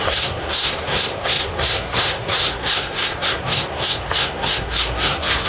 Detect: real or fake fake